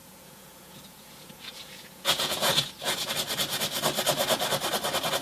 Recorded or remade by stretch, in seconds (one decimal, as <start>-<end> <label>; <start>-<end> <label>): 0.0-3.1 remade; 3.1-5.2 recorded